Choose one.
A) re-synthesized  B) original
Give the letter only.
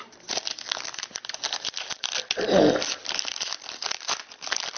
B